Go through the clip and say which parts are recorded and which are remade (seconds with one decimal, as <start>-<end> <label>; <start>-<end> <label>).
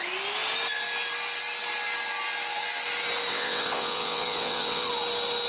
0.0-3.3 recorded; 3.3-4.9 remade; 4.9-5.5 recorded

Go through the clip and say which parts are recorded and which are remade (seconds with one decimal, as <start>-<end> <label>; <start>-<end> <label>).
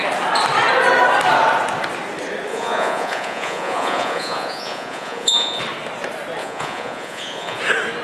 0.0-2.5 recorded; 2.5-5.6 remade; 5.6-6.4 recorded; 6.4-7.6 remade; 7.6-8.0 recorded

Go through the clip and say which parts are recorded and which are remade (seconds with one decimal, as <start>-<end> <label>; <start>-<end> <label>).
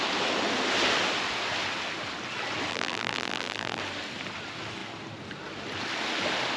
0.0-2.7 recorded; 2.7-3.8 remade; 3.8-6.6 recorded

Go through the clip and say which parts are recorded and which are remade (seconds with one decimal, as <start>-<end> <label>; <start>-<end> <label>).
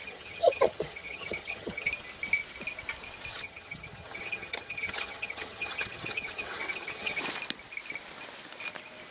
0.0-1.9 remade; 1.9-3.3 recorded; 3.3-7.2 remade; 7.2-9.1 recorded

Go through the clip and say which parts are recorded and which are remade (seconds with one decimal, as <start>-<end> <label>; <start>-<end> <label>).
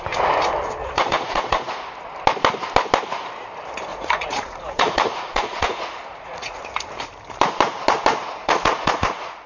0.0-0.8 recorded; 0.8-1.6 remade; 1.6-3.9 recorded; 3.9-6.6 remade; 6.6-8.4 recorded; 8.4-9.5 remade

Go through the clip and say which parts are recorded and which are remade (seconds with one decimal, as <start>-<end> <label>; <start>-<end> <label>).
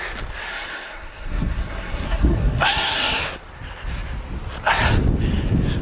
0.0-0.5 recorded; 0.5-3.2 remade; 3.2-5.8 recorded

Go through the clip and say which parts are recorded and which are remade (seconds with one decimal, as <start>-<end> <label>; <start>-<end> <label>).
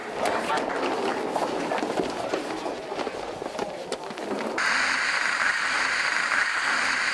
0.0-0.7 recorded; 0.7-1.1 remade; 1.1-5.4 recorded; 5.4-7.1 remade